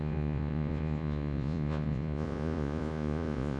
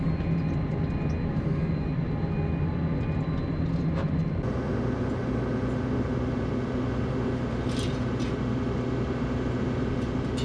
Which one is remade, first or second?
first